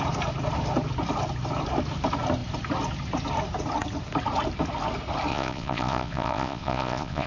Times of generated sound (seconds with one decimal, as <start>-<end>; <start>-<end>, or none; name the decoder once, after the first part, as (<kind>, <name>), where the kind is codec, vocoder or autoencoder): 5.3-7.3 (vocoder, Vocos)